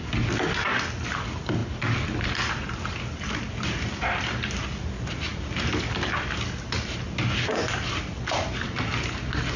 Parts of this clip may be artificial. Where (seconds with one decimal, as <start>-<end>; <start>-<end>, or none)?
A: none